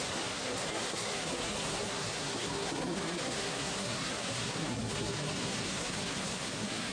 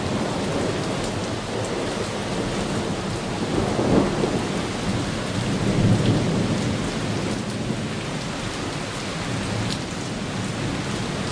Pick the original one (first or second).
second